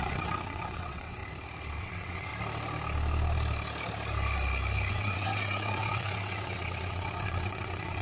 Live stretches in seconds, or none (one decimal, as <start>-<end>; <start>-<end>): 1.2-1.8; 2.3-4.9